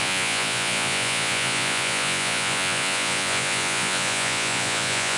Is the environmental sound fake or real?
fake